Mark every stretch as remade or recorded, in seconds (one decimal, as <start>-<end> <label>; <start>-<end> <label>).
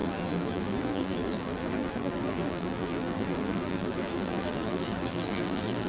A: 0.0-5.9 remade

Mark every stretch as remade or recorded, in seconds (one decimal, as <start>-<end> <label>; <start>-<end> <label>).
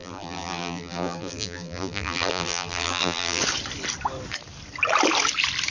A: 0.0-3.4 remade; 3.4-5.7 recorded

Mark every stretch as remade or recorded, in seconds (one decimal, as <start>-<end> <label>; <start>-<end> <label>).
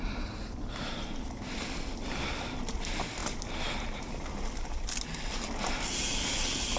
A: 0.0-6.8 recorded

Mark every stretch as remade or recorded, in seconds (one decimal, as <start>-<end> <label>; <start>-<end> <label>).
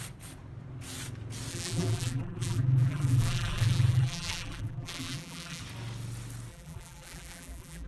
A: 0.0-1.5 recorded; 1.5-5.6 remade; 5.6-6.5 recorded; 6.5-7.9 remade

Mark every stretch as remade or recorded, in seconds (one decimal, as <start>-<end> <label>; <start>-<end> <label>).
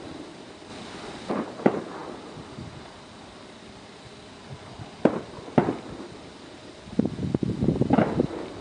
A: 0.0-8.6 recorded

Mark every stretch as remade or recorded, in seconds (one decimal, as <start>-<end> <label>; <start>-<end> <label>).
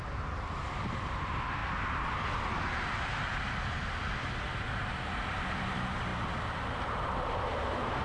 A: 0.0-1.6 remade; 1.6-4.7 recorded; 4.7-6.1 remade; 6.1-6.9 recorded; 6.9-8.0 remade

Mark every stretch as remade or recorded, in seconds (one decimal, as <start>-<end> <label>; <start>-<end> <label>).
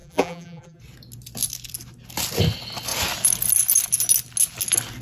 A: 0.0-0.8 remade; 0.8-5.0 recorded